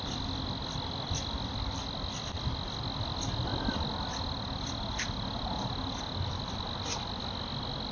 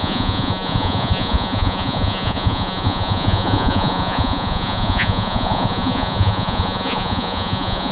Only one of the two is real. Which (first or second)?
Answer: first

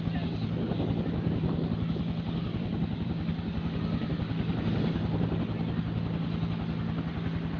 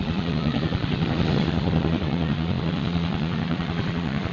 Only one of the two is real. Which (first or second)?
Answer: first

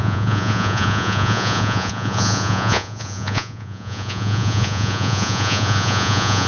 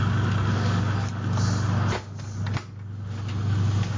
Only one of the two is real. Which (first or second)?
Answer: second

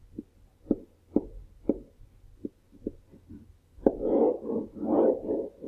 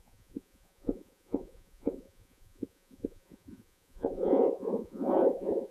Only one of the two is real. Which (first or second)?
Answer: first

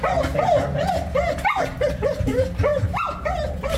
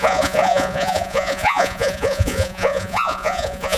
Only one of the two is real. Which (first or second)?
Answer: first